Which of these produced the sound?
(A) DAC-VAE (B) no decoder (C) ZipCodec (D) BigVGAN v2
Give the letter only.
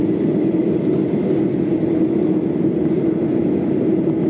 B